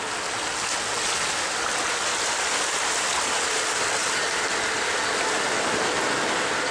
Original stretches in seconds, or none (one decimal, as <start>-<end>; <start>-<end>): 0.0-6.7